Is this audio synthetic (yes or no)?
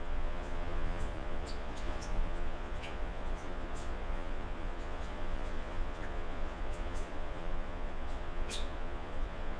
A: yes